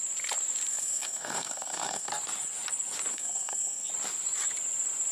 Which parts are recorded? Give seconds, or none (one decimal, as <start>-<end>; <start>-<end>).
0.0-0.7; 2.1-3.1; 3.9-5.1